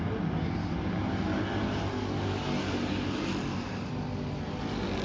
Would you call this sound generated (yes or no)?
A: no